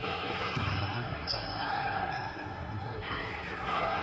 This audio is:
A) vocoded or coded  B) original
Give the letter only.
A